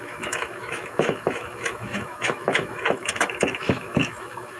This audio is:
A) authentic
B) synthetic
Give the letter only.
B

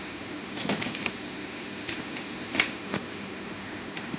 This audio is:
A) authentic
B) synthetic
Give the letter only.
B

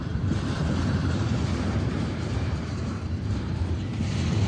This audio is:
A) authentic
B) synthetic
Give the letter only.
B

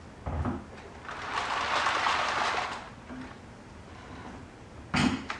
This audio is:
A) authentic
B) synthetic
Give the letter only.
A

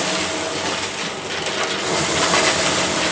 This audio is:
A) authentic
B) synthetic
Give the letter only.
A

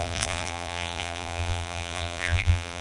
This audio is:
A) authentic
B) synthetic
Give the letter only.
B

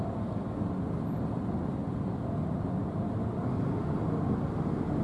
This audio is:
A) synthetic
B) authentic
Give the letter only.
B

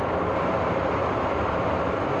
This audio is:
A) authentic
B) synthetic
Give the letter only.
A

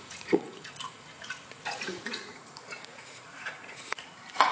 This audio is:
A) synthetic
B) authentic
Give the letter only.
A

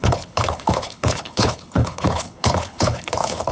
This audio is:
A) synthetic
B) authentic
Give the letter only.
A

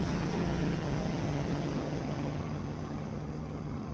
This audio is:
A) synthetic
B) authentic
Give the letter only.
A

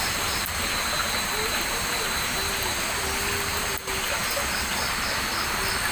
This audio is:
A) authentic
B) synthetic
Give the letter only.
A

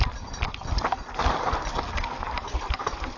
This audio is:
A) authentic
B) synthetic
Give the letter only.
A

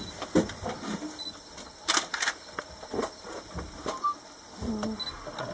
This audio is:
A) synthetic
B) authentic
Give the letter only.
B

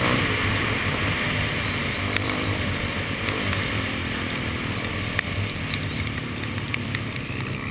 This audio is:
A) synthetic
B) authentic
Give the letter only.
A